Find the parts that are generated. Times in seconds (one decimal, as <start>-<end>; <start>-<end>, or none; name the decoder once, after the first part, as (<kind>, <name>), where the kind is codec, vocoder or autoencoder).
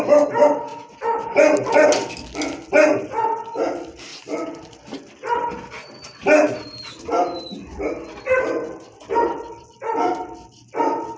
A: none